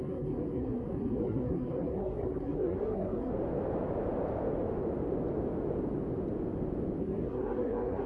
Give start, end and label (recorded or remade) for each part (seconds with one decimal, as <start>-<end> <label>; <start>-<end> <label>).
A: 0.0-3.3 remade; 3.3-7.0 recorded; 7.0-8.1 remade